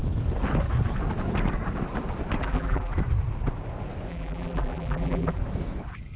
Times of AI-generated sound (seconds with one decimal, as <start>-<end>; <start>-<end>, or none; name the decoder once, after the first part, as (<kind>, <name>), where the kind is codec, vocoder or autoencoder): 2.4-2.9 (vocoder, BigVGAN v2); 4.1-5.4